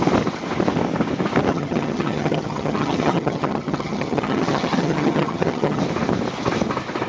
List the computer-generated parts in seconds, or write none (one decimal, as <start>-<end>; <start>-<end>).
1.5-5.8